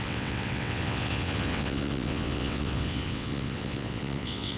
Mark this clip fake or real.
fake